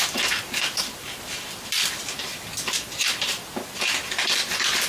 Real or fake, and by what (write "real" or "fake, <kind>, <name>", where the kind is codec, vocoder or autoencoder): fake, vocoder, BigVGAN v2